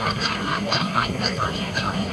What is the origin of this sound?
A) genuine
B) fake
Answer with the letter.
B